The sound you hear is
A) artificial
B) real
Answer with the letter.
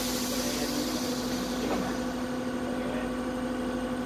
B